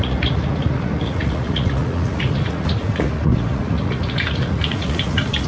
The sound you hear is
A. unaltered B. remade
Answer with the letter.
B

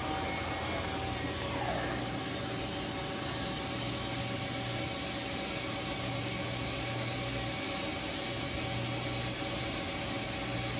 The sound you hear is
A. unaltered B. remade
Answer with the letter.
A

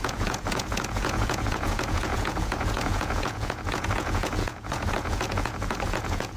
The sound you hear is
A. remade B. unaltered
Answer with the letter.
A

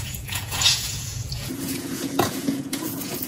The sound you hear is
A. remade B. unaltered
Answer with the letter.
A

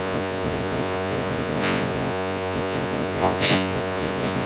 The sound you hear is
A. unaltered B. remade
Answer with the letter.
B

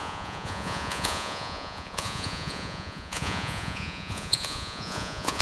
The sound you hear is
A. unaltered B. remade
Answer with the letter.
B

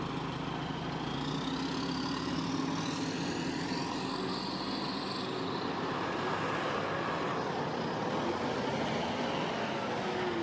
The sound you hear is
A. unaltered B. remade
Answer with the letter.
A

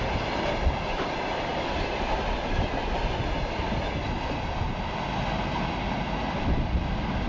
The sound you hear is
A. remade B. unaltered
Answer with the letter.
B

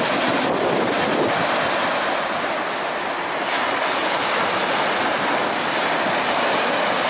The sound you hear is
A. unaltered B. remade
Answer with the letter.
A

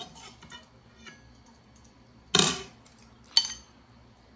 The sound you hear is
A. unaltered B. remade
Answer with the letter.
A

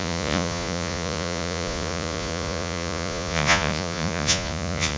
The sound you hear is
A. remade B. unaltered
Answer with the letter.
A